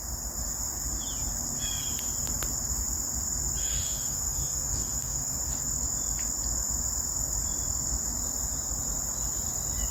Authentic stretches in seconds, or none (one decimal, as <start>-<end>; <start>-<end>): 0.0-3.6; 5.4-9.9